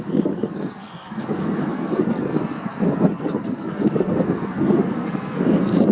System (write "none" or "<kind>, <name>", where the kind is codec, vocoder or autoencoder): codec, SNAC